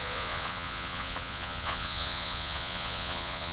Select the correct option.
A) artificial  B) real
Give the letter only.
A